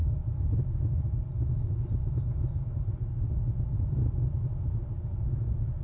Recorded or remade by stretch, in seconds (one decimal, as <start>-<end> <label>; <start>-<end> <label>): 0.0-5.8 recorded